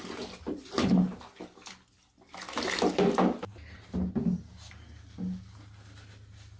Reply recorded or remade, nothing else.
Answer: recorded